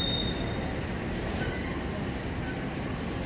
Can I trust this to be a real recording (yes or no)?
yes